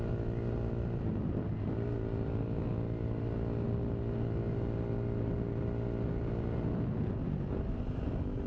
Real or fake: real